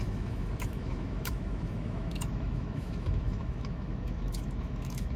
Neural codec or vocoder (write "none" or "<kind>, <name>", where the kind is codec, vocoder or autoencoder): autoencoder, DAC-VAE